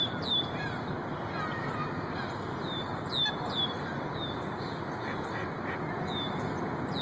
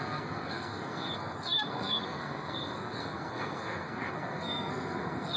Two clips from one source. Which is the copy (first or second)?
second